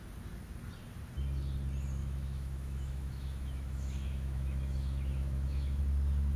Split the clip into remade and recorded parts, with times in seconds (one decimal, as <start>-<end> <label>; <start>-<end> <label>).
0.0-2.0 recorded; 2.0-5.8 remade; 5.8-6.4 recorded